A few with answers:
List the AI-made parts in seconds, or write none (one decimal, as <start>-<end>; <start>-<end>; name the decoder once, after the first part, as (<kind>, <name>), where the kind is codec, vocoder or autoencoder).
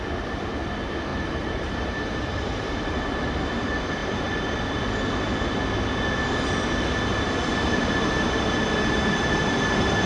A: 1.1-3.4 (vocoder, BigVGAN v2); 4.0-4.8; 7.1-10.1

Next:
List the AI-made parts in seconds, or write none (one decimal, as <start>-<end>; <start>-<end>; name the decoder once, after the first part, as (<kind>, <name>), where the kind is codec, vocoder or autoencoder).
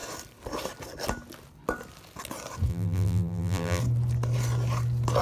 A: 2.7-3.8 (vocoder, BigVGAN v2)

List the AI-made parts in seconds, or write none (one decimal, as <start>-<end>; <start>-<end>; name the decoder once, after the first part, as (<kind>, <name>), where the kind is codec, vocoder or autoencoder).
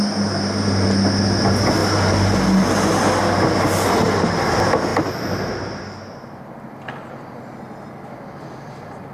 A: none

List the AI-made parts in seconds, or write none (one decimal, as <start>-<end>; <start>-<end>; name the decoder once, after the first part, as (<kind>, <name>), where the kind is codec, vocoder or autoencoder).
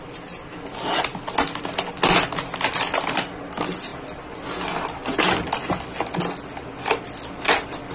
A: none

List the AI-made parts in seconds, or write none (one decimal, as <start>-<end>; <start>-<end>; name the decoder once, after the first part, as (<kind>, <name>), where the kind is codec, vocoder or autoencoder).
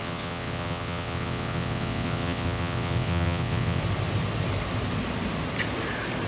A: 0.0-3.8 (vocoder, WaveNeXt)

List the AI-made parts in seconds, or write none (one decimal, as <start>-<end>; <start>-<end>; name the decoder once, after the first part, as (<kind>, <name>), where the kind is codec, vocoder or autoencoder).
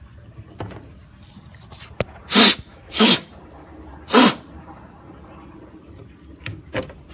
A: 2.7-3.3 (autoencoder, DAC-VAE)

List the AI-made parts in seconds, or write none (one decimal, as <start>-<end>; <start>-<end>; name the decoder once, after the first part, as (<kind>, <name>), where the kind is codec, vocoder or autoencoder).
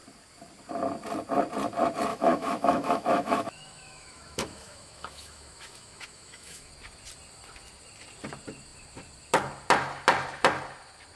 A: 2.1-6.7 (autoencoder, DAC-VAE)